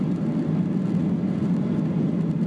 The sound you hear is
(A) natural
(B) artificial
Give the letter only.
A